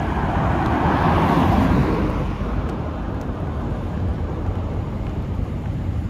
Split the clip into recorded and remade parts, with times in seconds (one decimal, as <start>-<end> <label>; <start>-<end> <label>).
0.0-1.8 recorded; 1.8-2.9 remade; 2.9-4.1 recorded; 4.1-6.1 remade